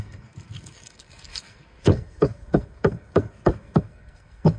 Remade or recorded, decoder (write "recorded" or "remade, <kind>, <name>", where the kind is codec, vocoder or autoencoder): remade, codec, SNAC